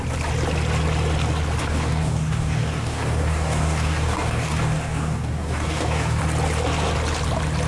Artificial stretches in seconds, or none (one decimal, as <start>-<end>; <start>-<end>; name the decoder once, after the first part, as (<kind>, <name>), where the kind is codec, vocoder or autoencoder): 1.6-6.2 (codec, DAC)